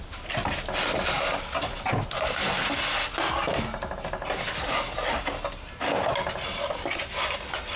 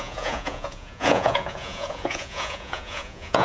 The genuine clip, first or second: first